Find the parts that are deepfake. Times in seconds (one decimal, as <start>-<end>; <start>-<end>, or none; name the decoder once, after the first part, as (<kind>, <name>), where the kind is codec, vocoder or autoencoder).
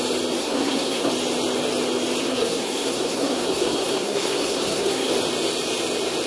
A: 0.4-1.1 (codec, SNAC); 2.2-5.1